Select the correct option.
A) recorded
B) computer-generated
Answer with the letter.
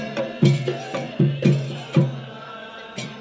B